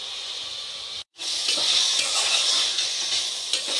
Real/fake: fake